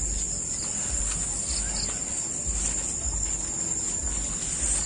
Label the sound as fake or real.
real